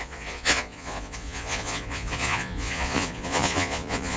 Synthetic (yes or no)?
yes